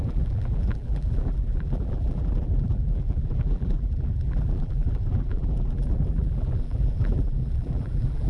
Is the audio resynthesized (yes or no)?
yes